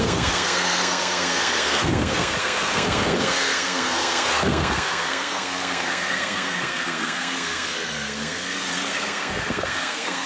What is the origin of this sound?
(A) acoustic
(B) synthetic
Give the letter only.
B